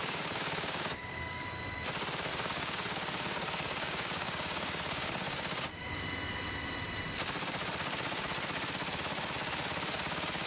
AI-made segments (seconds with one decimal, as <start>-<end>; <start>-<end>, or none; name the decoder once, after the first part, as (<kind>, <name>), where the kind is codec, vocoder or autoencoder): 0.0-1.5 (codec, DAC); 2.3-6.0